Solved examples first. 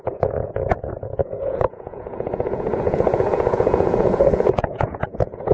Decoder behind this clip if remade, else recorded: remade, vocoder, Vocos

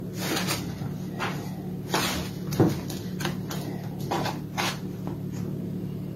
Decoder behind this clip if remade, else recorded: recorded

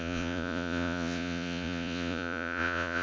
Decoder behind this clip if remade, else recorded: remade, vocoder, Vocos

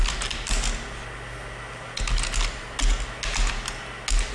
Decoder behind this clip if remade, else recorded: recorded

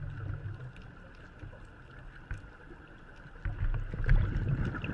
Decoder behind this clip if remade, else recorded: recorded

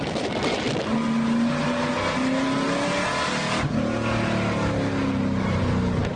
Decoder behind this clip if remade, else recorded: recorded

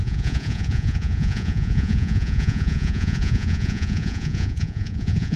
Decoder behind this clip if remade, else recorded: remade, vocoder, Vocos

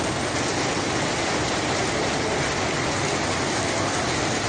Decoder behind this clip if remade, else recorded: recorded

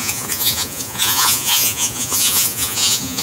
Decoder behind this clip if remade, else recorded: remade, vocoder, Vocos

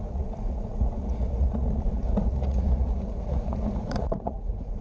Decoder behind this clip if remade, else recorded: remade, vocoder, Vocos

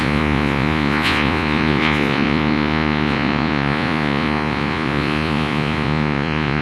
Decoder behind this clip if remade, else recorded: remade, vocoder, Vocos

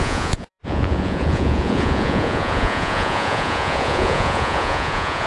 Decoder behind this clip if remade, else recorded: remade, vocoder, Vocos